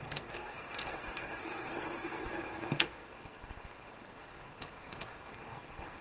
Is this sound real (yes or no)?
no